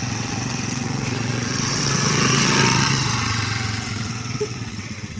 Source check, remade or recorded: remade